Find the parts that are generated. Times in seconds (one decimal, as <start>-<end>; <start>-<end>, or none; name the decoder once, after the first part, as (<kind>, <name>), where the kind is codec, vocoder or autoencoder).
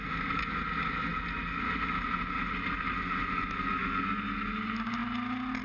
none